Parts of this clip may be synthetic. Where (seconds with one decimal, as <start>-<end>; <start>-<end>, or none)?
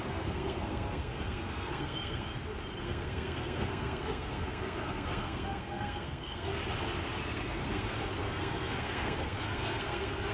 0.0-2.3; 2.8-6.5; 7.2-10.3